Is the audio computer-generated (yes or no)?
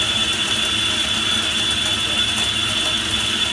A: no